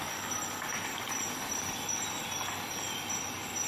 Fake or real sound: real